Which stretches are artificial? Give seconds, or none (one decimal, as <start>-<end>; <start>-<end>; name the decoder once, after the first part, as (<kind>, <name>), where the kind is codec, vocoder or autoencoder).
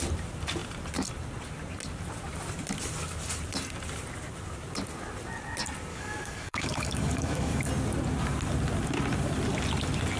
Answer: 5.9-7.7 (codec, DAC)